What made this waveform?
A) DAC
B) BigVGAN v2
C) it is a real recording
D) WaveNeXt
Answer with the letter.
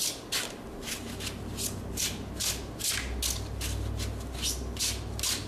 C